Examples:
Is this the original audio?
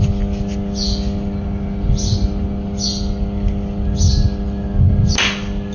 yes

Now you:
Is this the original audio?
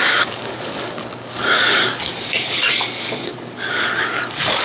no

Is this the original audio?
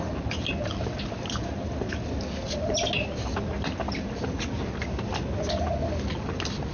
yes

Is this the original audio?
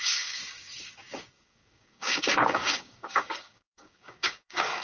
no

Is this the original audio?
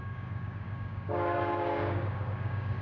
no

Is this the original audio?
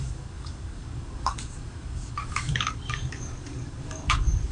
no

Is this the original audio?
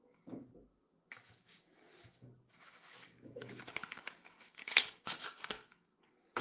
no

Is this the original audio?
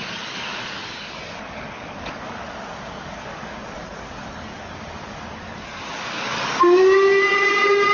no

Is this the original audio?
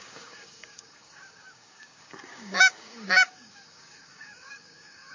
no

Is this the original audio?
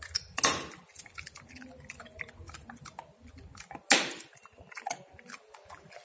yes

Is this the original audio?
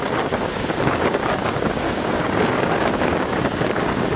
no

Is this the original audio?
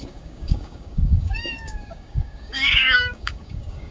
no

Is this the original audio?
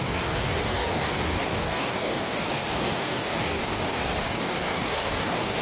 no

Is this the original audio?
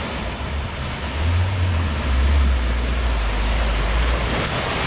yes